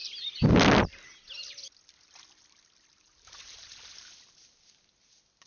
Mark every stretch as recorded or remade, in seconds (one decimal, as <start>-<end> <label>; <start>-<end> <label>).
0.0-5.5 recorded